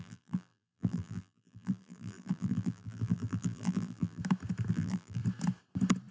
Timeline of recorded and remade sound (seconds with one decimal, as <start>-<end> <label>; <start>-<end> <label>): 0.0-4.2 remade; 4.2-4.7 recorded; 4.7-5.2 remade; 5.2-6.1 recorded